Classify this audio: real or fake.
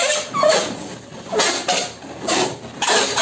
real